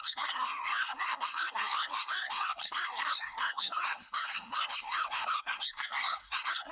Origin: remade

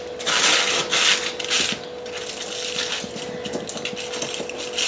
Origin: recorded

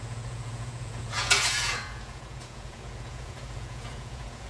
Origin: remade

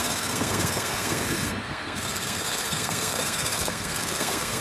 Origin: remade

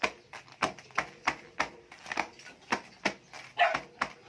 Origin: recorded